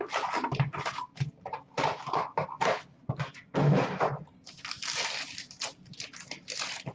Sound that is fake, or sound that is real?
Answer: real